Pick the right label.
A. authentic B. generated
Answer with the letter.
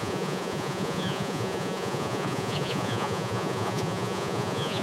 B